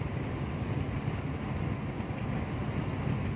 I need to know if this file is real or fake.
real